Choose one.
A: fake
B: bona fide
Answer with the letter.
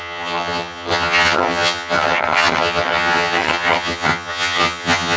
A